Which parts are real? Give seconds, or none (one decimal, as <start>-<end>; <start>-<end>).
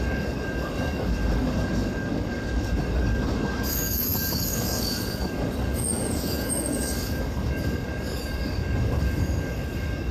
none